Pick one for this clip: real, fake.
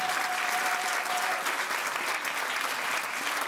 real